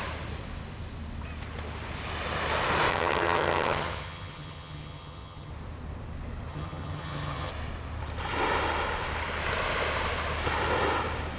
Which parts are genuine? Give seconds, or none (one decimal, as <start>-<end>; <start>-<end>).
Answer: 0.0-2.9; 5.5-6.5; 7.5-11.4